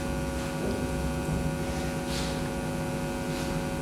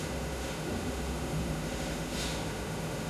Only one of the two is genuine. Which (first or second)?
first